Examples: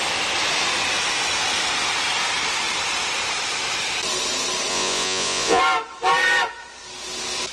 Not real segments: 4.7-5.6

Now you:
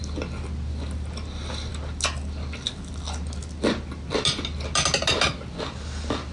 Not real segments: none

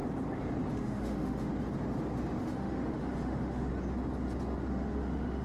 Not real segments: 0.7-1.5; 2.4-3.7; 4.7-5.4

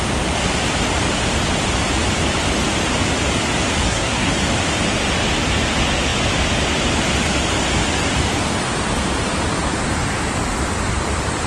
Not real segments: 3.8-4.3